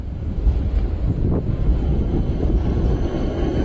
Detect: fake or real real